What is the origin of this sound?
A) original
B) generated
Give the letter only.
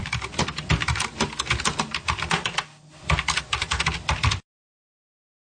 A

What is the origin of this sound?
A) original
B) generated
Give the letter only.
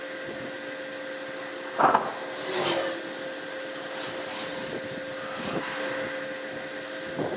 A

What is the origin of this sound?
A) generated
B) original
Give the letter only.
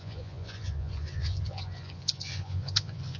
A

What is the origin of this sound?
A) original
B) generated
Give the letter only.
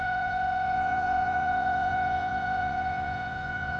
B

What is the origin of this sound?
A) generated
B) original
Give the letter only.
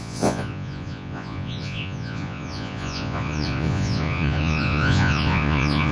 A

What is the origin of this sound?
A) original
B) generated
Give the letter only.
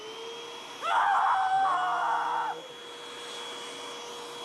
A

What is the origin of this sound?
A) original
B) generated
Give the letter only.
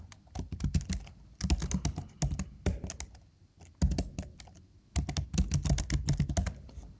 A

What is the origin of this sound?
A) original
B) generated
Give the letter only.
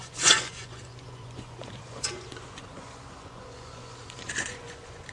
B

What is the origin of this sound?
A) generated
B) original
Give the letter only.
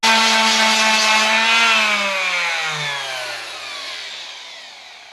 B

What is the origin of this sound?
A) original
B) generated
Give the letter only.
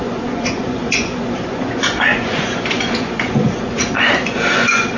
B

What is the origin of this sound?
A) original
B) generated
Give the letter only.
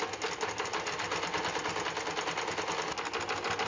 A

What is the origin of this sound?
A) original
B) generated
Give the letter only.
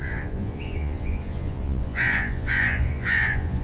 B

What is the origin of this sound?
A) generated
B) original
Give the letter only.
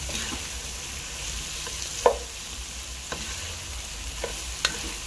B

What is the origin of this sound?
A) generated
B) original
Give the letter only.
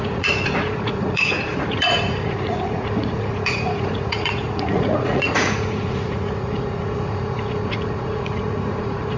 A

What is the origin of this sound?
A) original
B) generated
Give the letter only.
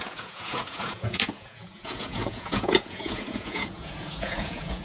B